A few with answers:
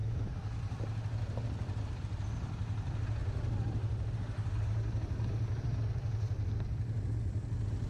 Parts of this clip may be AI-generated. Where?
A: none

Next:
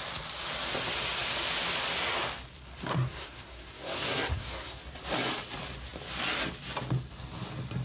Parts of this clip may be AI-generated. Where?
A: 2.9-4.8

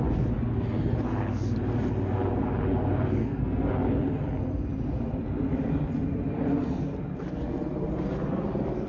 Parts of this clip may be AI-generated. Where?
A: 3.2-3.7

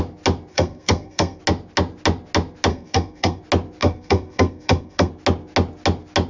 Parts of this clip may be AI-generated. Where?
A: 0.5-1.4; 2.7-3.4; 3.8-5.1